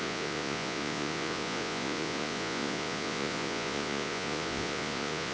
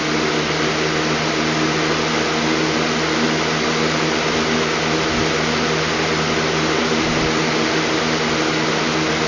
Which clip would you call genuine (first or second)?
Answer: second